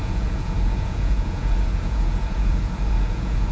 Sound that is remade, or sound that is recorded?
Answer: remade